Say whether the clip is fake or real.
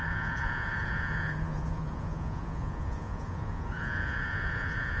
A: fake